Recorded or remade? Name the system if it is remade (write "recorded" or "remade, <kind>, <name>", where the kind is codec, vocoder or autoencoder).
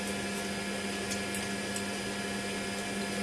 recorded